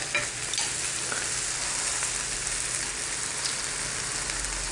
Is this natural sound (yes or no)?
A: yes